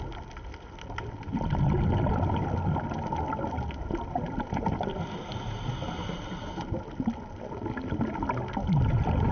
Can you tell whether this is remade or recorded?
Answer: recorded